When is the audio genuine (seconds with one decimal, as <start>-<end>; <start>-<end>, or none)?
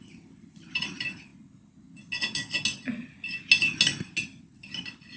1.3-4.4